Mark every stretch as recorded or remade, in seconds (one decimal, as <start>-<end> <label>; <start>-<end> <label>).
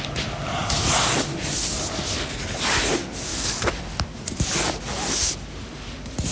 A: 0.0-3.3 recorded; 3.3-3.8 remade; 3.8-6.3 recorded